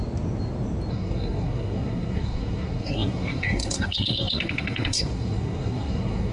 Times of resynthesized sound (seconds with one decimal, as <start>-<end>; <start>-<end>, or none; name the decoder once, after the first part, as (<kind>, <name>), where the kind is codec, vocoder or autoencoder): 0.9-6.3 (codec, SNAC)